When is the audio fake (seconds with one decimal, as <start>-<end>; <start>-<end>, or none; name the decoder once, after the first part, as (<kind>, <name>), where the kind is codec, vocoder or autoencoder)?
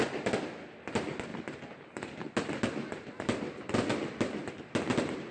none